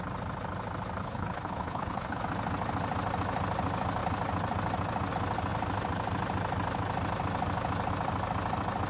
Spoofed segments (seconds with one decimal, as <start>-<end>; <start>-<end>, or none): 1.0-2.2